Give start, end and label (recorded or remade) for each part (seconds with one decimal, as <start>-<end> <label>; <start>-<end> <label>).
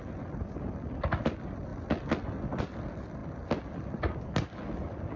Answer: 0.0-5.2 recorded